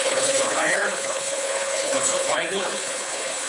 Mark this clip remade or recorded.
remade